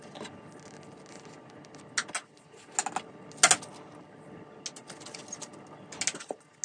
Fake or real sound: real